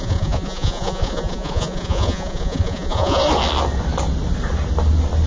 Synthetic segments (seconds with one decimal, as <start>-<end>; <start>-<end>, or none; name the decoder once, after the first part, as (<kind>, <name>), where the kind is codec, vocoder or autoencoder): 0.0-3.2 (vocoder, Vocos)